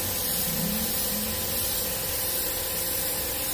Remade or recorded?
recorded